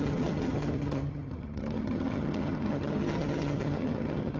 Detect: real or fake fake